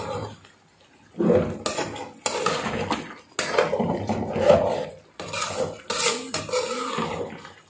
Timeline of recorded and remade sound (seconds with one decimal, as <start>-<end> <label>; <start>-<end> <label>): 0.0-7.7 recorded

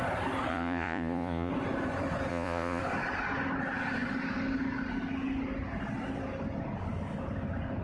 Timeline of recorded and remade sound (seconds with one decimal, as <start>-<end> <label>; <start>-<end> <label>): 0.0-0.5 recorded; 0.5-1.5 remade; 1.5-2.3 recorded; 2.3-2.8 remade; 2.8-7.8 recorded

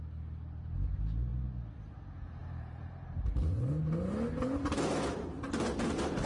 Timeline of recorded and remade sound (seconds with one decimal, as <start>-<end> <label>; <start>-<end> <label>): 0.0-2.4 recorded; 2.4-3.7 remade; 3.7-6.3 recorded

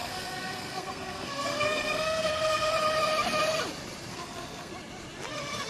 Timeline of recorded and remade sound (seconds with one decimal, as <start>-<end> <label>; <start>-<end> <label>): 0.0-2.7 remade; 2.7-4.1 recorded; 4.1-4.7 remade; 4.7-5.7 recorded

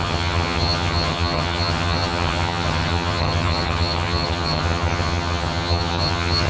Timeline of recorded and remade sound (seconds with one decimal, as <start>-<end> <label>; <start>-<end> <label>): 0.0-6.5 remade